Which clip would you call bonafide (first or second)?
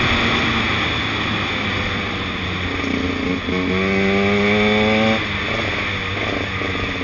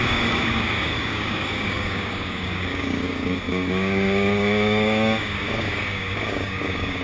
first